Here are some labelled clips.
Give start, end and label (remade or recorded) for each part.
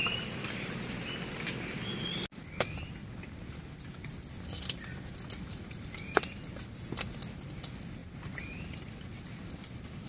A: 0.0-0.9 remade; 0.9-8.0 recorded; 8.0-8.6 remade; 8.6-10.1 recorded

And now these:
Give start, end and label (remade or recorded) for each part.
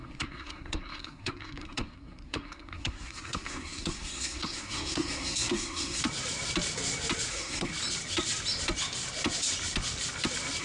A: 0.0-6.0 remade; 6.0-7.3 recorded; 7.3-7.7 remade; 7.7-10.6 recorded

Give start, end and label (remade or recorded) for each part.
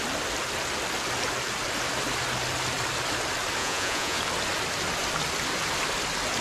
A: 0.0-3.6 recorded; 3.6-4.2 remade; 4.2-6.4 recorded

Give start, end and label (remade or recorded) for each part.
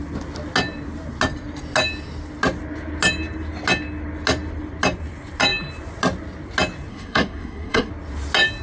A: 0.0-6.9 recorded; 6.9-7.9 remade; 7.9-8.6 recorded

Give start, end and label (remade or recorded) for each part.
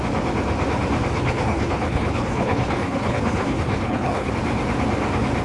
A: 0.0-1.1 recorded; 1.1-4.3 remade; 4.3-5.4 recorded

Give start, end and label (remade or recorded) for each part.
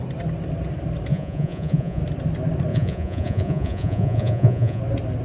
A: 0.0-1.1 recorded; 1.1-2.0 remade; 2.0-2.7 recorded; 2.7-4.8 remade; 4.8-5.2 recorded